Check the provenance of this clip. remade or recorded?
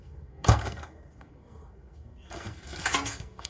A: remade